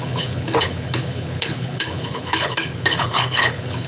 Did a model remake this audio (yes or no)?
yes